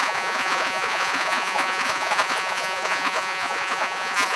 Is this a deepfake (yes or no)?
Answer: yes